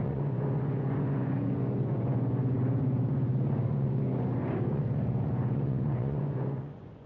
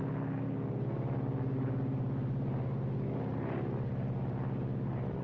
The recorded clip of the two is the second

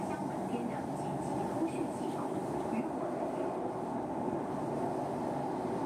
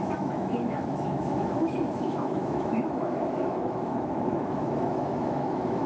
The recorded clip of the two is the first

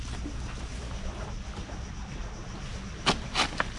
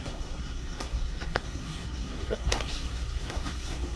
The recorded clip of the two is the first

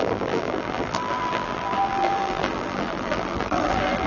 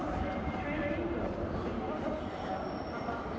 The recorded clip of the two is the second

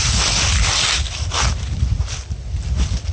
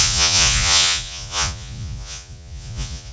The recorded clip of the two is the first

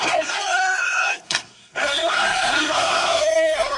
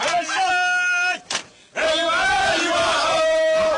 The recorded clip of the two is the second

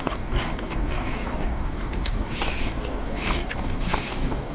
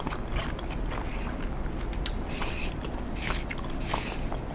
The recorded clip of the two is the second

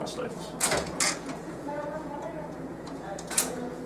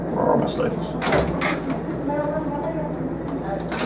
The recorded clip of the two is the second